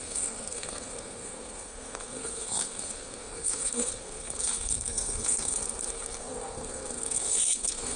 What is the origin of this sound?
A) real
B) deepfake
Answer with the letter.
B